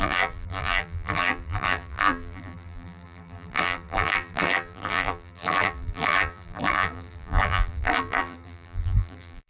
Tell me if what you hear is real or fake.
fake